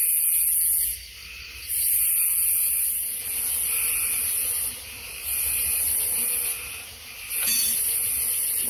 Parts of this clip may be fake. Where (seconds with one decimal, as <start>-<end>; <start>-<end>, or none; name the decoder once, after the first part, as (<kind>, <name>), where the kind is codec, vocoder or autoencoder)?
0.9-2.1 (vocoder, BigVGAN v2); 2.6-3.2; 4.2-8.7